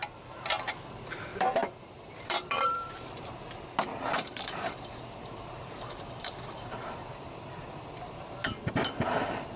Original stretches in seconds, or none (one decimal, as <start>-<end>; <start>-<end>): 0.0-1.3; 3.3-3.9; 7.9-9.6